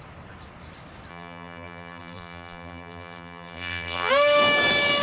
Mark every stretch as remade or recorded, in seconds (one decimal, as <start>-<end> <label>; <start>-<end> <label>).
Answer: 0.0-1.1 recorded; 1.1-4.1 remade; 4.1-5.0 recorded